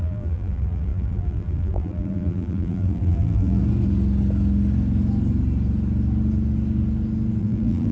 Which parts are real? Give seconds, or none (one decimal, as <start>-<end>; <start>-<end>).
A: 3.6-7.4